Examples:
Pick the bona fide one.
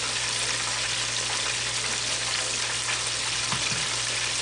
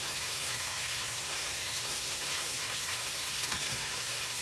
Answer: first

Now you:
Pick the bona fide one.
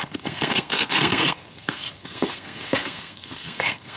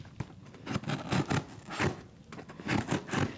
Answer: second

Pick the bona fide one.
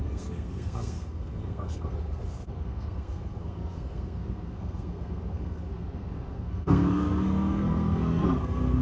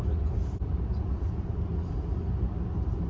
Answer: second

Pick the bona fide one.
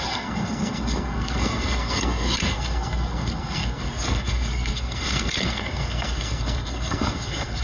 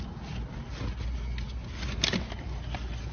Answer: second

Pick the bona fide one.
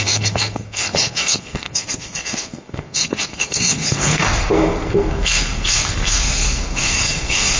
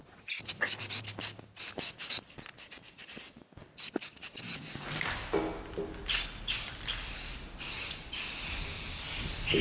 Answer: second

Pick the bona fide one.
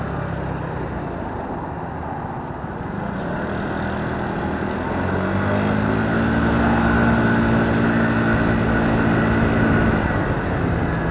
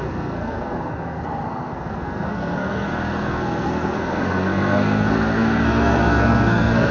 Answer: first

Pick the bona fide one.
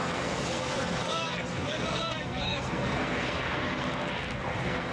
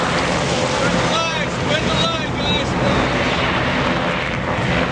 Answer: second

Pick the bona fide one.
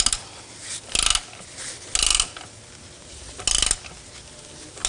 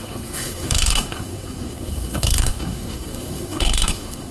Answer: first